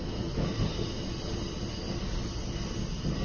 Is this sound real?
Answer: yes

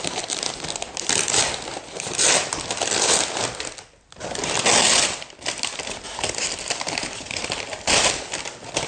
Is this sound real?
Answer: yes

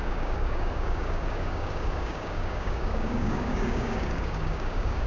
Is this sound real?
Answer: no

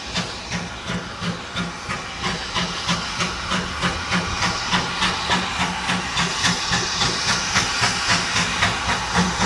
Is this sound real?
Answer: yes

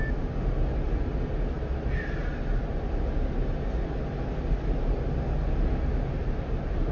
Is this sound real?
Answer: yes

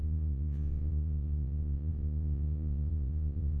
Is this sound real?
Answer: no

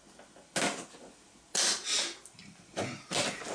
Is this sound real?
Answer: yes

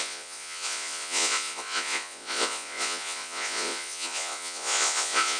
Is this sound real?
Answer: no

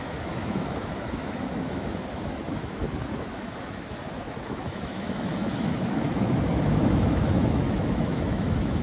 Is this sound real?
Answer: no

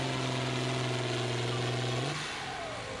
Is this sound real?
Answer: yes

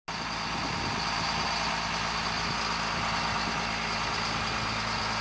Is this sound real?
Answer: yes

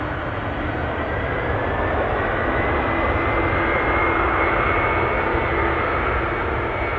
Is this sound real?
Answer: yes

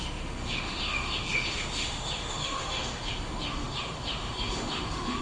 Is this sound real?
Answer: no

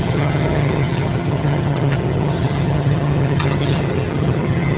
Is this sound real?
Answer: no